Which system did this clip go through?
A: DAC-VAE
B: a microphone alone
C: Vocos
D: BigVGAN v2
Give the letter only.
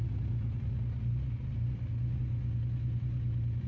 B